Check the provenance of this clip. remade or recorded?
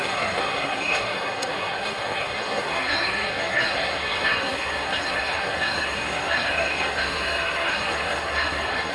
remade